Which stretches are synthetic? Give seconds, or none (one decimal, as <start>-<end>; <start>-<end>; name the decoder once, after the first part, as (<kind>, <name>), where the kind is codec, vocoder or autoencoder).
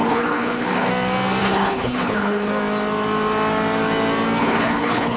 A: 0.0-0.9 (codec, HILCodec); 1.4-2.5; 4.4-5.2